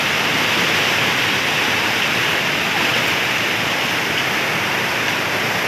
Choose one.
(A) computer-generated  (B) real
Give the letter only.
B